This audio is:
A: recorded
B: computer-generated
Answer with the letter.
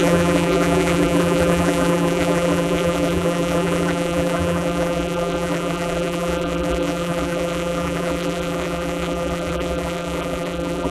B